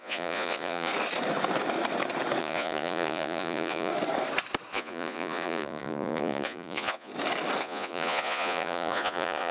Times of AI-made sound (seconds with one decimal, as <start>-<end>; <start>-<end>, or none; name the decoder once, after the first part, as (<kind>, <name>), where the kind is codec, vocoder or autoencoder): 0.0-0.9 (vocoder, Vocos); 2.4-3.9; 4.7-7.1; 7.6-9.5

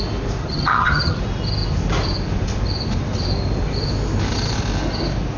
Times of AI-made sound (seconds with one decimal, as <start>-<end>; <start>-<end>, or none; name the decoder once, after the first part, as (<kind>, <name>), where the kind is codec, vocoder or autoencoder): 0.4-1.2 (vocoder, HiFi-GAN)

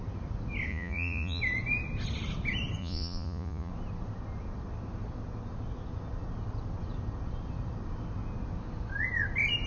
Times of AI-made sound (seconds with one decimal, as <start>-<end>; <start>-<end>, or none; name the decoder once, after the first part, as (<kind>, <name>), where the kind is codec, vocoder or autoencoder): 0.7-1.4 (vocoder, Vocos); 2.8-3.7

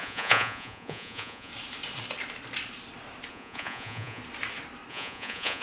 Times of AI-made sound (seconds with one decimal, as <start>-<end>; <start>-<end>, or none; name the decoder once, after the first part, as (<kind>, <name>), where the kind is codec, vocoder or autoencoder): 0.0-1.5 (vocoder, Vocos); 3.3-4.2; 4.9-5.6

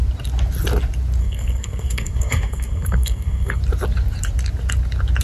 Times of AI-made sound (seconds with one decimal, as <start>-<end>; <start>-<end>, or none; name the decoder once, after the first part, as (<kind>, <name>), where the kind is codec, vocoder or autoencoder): 1.2-3.6 (codec, SNAC)

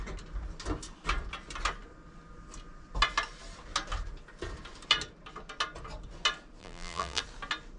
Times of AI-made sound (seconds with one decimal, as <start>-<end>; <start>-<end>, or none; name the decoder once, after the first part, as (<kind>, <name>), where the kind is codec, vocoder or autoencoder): 6.6-7.2 (vocoder, BigVGAN v2)

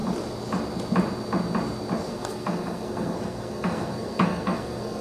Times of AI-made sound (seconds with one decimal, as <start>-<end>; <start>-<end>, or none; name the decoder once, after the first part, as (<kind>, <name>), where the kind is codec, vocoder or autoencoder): 2.1-5.0 (codec, SNAC)

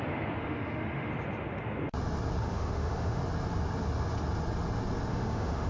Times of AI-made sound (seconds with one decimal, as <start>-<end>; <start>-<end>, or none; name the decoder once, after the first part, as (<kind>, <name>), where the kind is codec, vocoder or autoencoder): 0.4-1.1 (autoencoder, DAC-VAE); 2.4-3.2; 5.1-5.7